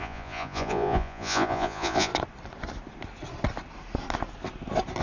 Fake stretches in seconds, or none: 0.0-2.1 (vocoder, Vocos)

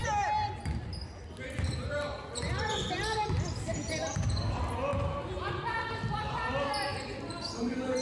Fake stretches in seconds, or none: 2.1-2.9 (vocoder, Vocos)

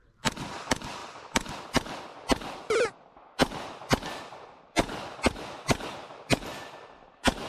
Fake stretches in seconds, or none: none